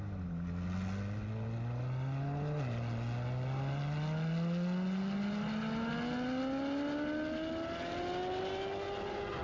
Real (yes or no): yes